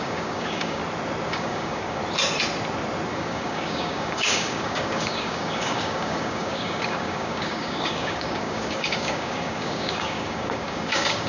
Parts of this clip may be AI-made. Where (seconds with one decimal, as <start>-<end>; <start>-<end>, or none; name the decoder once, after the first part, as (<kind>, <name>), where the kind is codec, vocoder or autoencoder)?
0.0-0.8 (codec, DAC); 1.3-2.0; 3.1-11.3